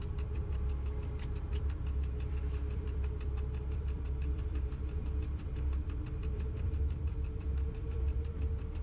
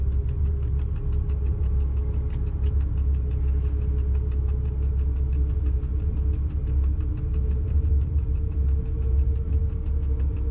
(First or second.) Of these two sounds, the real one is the second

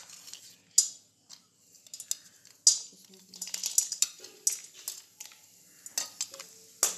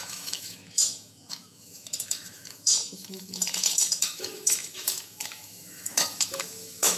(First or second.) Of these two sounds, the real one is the first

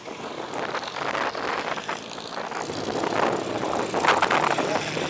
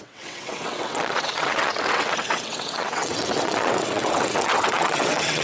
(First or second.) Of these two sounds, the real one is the first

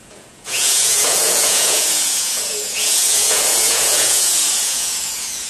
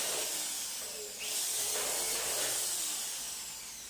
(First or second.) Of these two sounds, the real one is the second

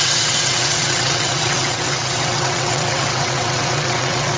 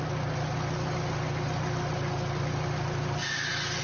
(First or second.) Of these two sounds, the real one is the second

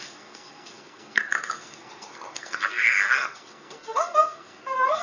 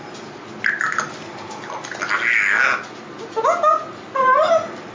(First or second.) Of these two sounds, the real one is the second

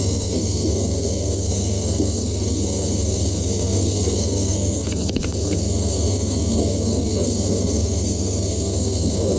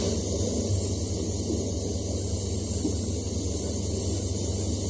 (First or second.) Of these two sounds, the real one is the second